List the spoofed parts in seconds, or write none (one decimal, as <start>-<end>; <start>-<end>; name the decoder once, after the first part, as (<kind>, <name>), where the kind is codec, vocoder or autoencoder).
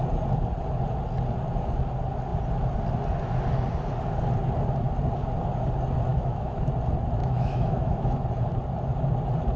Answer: 6.1-6.7 (autoencoder, DAC-VAE); 7.2-8.2